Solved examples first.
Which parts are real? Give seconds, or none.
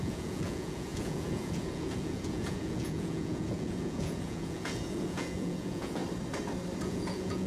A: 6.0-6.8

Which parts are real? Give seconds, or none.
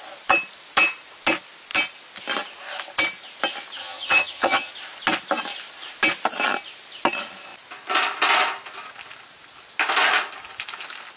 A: 0.0-3.8; 4.7-11.2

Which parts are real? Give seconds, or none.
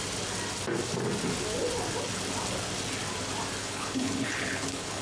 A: 0.0-3.6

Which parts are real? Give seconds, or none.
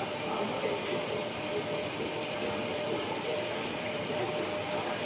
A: 0.0-1.2; 1.9-2.7; 4.2-5.1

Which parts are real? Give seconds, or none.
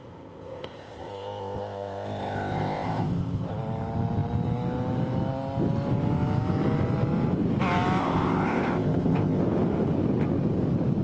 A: 3.5-8.0; 9.4-11.0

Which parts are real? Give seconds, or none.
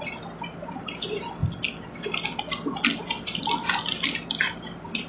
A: 0.0-5.1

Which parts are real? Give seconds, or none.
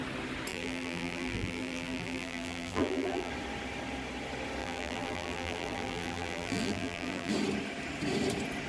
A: 0.0-0.5; 3.3-4.6; 7.3-8.7